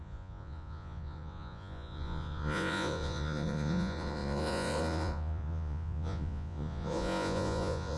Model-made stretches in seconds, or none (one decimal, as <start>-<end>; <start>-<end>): 0.0-8.0